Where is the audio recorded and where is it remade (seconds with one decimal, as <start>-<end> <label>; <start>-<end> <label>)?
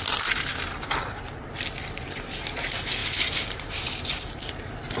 0.0-0.5 recorded; 0.5-1.6 remade; 1.6-3.0 recorded; 3.0-3.8 remade; 3.8-5.0 recorded